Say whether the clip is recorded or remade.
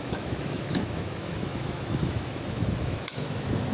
remade